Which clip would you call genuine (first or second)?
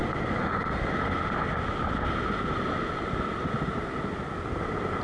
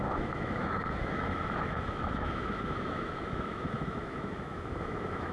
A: first